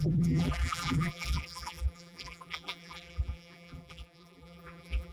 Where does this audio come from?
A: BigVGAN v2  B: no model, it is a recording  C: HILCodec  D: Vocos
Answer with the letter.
A